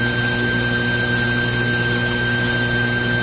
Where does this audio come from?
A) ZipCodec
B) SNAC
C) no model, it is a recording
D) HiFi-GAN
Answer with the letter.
C